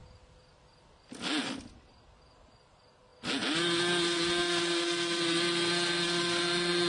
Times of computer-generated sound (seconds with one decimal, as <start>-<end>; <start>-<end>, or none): none